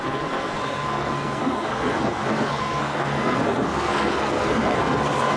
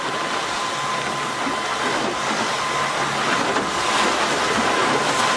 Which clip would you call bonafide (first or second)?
second